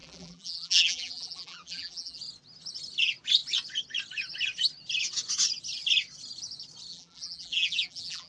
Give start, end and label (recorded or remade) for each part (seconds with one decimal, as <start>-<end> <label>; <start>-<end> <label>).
0.0-2.2 remade; 2.2-6.9 recorded; 6.9-8.3 remade